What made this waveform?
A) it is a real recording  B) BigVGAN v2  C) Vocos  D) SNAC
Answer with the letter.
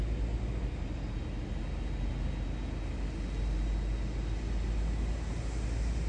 A